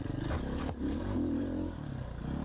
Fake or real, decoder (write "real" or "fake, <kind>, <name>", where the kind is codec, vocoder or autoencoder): fake, codec, DAC